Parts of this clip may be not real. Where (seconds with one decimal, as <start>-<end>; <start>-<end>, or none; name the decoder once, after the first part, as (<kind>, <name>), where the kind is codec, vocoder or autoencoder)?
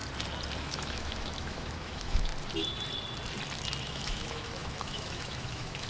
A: 0.6-2.3 (autoencoder, DAC-VAE); 3.8-5.9